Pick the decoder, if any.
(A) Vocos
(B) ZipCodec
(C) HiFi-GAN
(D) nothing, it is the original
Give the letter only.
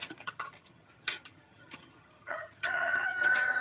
C